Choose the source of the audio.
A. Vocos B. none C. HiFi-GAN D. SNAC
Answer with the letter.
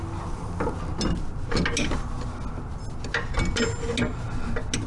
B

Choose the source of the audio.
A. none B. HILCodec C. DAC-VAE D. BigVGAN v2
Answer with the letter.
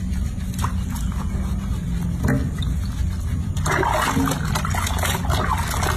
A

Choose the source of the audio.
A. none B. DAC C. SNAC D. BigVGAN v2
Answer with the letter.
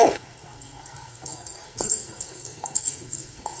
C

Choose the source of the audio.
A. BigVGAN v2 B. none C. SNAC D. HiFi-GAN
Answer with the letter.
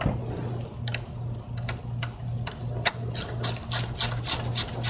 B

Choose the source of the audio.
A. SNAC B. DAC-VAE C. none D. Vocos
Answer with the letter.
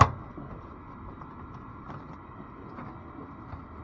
C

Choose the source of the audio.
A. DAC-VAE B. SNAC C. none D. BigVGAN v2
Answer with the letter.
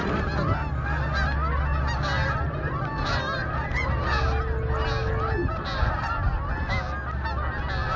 C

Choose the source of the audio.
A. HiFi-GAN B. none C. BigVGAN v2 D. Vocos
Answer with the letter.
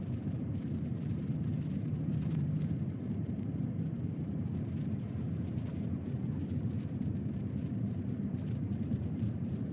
C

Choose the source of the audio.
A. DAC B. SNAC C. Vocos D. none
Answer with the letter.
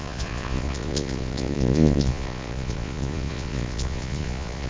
C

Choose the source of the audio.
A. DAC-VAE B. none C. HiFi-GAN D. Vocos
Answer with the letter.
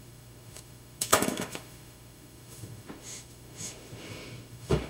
A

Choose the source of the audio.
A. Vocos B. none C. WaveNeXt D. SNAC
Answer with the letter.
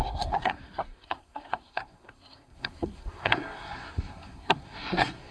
D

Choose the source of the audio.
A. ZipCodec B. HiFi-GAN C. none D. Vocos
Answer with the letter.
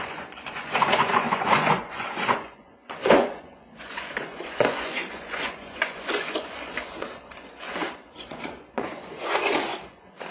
D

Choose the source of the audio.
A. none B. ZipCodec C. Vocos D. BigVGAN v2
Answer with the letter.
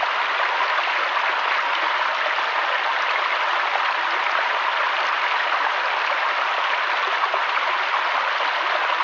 A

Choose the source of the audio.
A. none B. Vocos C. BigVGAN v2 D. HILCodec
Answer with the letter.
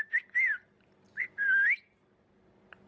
A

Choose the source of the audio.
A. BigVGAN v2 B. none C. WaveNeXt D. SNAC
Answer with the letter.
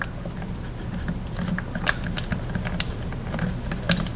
B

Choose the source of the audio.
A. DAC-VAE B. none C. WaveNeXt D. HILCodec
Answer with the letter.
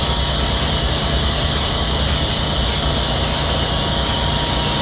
B